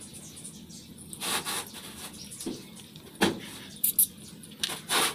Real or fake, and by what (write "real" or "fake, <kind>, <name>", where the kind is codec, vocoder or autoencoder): real